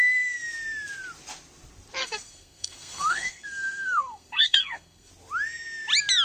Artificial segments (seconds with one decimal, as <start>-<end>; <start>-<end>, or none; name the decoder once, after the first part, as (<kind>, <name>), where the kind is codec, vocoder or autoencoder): 2.0-5.1 (codec, SNAC)